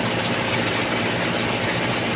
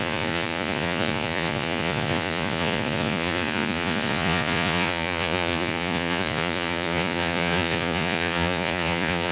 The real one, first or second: first